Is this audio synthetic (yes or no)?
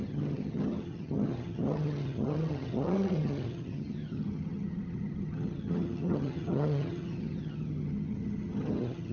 yes